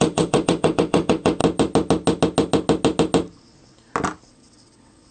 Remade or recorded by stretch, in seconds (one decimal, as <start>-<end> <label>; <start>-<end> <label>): 0.0-1.4 remade; 1.4-4.3 recorded; 4.3-5.1 remade